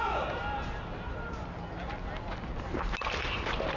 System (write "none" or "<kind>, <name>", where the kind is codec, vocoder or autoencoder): none